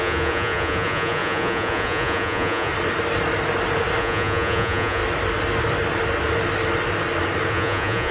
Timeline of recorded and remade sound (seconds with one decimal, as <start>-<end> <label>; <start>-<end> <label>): 0.0-2.7 remade; 2.7-4.0 recorded; 4.0-5.0 remade; 5.0-7.5 recorded; 7.5-8.1 remade